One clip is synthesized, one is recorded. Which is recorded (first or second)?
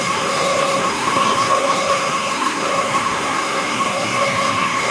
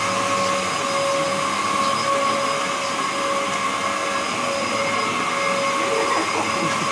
second